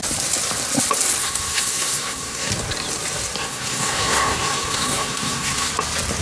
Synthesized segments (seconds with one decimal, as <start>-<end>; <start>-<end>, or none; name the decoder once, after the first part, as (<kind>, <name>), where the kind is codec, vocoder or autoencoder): 1.2-2.5 (codec, SNAC); 3.4-5.7